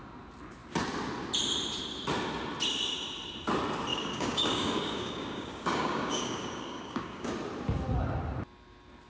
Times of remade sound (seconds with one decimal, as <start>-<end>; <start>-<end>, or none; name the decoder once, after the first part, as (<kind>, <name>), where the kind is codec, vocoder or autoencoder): 3.9-7.3 (codec, DAC)